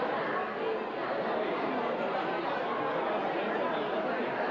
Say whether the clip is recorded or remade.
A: recorded